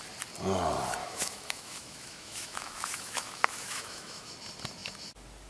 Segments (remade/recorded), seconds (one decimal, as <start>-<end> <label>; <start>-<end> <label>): 0.0-1.0 recorded; 1.0-4.3 remade; 4.3-5.5 recorded